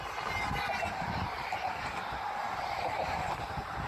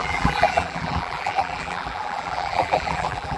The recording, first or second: first